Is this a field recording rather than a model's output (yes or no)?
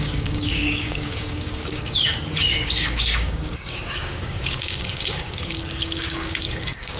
no